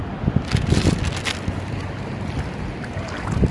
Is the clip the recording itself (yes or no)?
yes